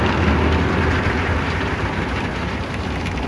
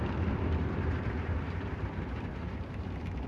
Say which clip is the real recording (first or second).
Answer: first